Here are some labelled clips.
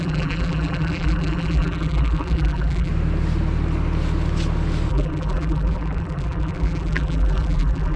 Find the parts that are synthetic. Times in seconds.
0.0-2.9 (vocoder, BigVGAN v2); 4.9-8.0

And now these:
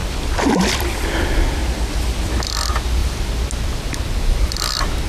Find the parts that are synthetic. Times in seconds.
0.0-1.0 (vocoder, BigVGAN v2); 1.6-2.4

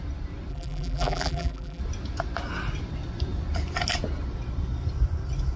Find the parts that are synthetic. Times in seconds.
0.5-1.8 (vocoder, BigVGAN v2)

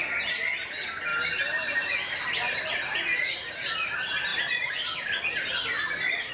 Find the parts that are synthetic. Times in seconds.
1.1-2.7 (vocoder, BigVGAN v2); 4.3-6.3

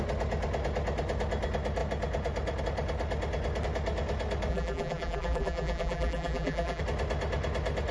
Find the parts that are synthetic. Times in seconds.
4.5-6.8 (vocoder, BigVGAN v2)

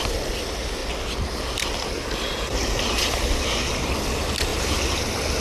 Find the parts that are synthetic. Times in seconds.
4.5-5.4 (vocoder, BigVGAN v2)

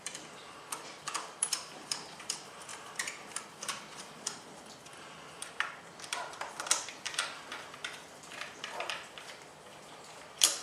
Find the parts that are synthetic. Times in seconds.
0.0-10.6 (vocoder, BigVGAN v2)